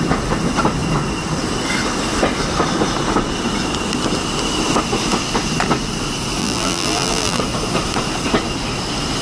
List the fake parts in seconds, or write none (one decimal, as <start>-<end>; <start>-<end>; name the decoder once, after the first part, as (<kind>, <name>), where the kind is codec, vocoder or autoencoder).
6.4-7.4 (vocoder, BigVGAN v2)